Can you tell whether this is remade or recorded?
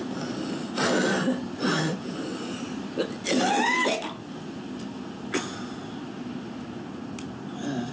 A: recorded